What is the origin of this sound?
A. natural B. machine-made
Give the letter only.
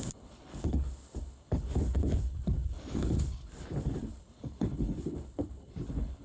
B